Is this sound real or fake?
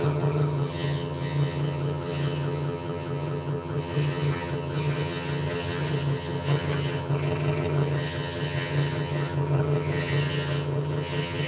fake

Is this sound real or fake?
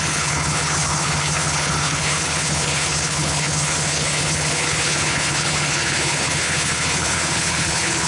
fake